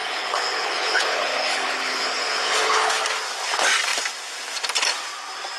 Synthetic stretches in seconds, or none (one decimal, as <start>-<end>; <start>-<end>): 0.0-2.9